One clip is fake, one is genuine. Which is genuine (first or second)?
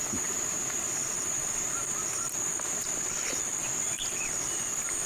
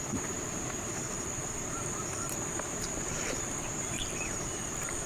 first